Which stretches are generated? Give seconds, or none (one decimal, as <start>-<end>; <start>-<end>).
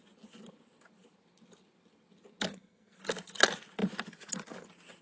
2.5-3.0